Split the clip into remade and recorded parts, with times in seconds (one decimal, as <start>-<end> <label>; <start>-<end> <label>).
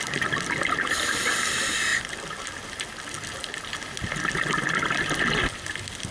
0.0-6.1 recorded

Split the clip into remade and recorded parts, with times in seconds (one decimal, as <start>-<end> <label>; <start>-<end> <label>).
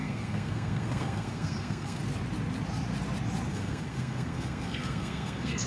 0.0-2.0 remade; 2.0-3.5 recorded; 3.5-5.7 remade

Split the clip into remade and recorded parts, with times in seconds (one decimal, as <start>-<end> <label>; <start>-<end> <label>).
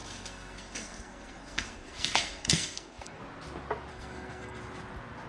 0.0-3.2 remade; 3.2-3.9 recorded; 3.9-4.6 remade; 4.6-5.3 recorded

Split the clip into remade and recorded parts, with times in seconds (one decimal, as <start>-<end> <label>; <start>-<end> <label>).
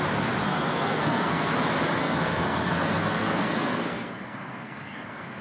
0.0-0.4 recorded; 0.4-1.5 remade; 1.5-2.0 recorded; 2.0-5.4 remade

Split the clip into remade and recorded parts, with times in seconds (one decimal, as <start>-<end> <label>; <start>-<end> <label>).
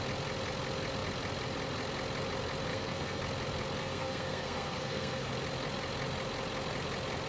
0.0-2.7 recorded; 2.7-3.2 remade; 3.2-3.8 recorded; 3.8-5.3 remade; 5.3-7.3 recorded